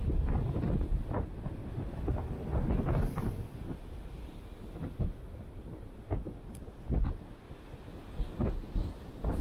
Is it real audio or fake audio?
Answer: real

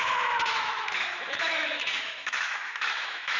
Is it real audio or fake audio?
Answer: fake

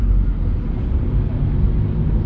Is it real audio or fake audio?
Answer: real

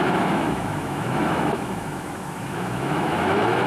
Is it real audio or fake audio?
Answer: fake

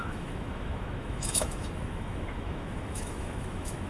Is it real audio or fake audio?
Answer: fake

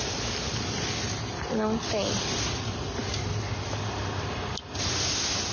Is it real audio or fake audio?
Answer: real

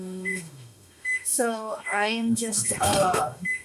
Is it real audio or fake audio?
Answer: fake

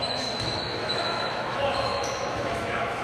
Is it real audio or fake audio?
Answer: fake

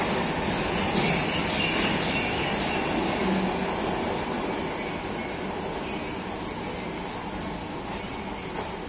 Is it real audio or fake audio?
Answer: real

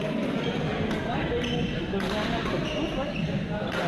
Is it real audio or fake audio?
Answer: real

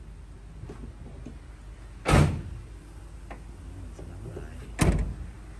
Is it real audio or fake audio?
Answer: real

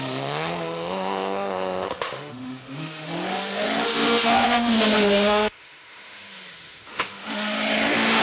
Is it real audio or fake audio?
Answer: fake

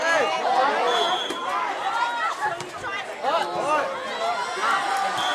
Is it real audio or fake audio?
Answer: real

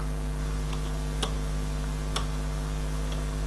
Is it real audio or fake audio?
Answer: real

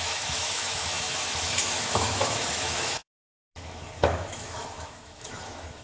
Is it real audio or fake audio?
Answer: fake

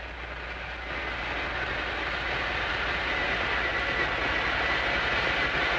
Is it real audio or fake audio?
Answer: real